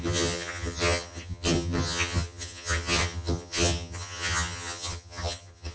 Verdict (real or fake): fake